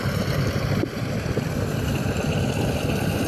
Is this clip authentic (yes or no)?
yes